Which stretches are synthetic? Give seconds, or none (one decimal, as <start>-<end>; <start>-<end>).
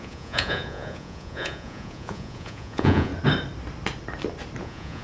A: 0.0-3.1; 4.6-5.0